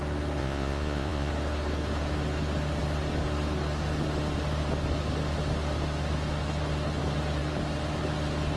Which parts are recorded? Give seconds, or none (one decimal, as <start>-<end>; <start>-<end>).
0.0-0.4; 1.3-8.6